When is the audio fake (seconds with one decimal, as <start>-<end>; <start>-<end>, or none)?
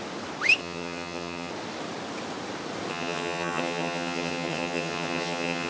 0.6-1.5; 2.9-5.7